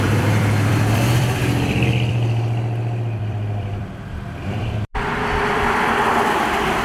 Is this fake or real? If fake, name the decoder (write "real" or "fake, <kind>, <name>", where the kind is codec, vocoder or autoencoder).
fake, vocoder, BigVGAN v2